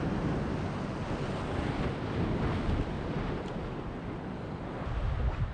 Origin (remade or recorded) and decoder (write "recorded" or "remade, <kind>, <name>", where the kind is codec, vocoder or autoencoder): recorded